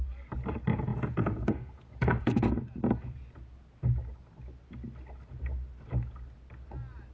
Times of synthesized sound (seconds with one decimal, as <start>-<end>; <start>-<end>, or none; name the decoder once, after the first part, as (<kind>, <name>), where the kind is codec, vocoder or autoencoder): 0.9-2.6 (vocoder, Vocos)

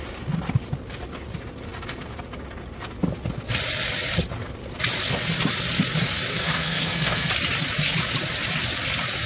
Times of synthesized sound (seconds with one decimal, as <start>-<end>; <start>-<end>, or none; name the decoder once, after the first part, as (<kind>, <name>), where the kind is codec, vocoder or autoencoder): 6.3-7.3 (codec, SNAC)

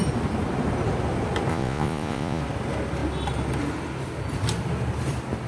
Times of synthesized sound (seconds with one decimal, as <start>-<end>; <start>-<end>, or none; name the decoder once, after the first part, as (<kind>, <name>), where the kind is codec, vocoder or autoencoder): 1.5-2.4 (vocoder, Vocos)